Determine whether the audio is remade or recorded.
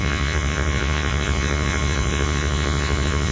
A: remade